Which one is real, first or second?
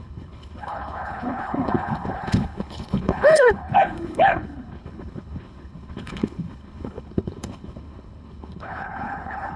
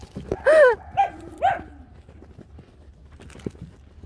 second